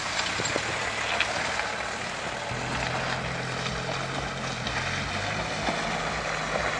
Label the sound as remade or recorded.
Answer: recorded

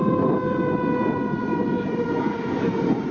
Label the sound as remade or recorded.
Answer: recorded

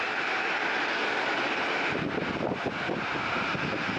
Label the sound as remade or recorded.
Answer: recorded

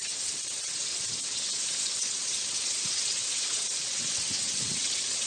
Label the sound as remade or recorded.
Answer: remade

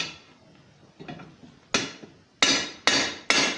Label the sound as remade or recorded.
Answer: recorded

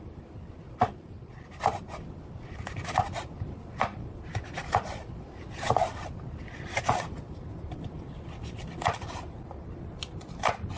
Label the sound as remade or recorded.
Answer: recorded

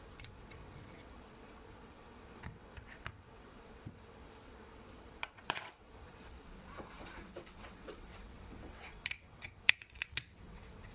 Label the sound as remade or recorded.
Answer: remade